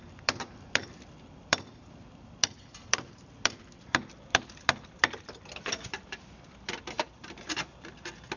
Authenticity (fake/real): fake